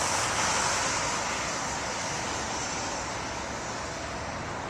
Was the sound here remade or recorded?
recorded